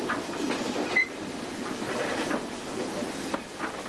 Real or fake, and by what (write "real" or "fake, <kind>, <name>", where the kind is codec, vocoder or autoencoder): real